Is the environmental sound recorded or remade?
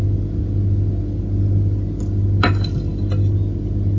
recorded